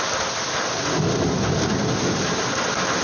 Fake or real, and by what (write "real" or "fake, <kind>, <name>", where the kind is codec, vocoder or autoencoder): real